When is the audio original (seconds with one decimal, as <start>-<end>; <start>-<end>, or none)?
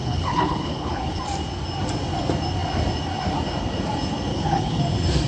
1.2-4.3; 4.8-5.3